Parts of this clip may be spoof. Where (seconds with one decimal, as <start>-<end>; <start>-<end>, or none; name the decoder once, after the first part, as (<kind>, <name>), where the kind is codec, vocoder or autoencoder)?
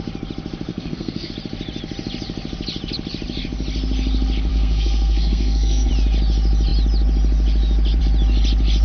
0.7-1.3 (codec, SNAC); 4.5-5.9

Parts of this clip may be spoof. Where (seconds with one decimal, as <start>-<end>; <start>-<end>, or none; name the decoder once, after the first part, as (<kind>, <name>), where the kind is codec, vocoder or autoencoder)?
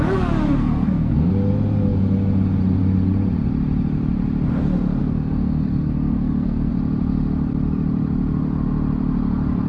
0.6-1.3 (codec, SNAC); 5.0-6.7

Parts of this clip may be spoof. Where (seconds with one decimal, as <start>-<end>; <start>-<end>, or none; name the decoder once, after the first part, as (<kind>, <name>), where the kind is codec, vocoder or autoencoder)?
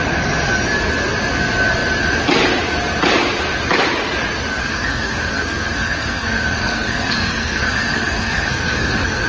4.6-9.3 (codec, SNAC)